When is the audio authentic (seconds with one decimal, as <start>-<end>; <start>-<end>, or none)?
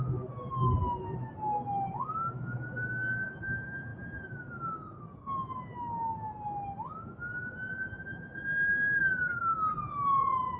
0.0-10.6